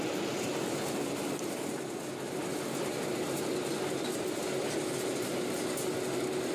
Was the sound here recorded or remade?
recorded